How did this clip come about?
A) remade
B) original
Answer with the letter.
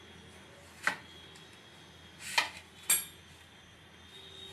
B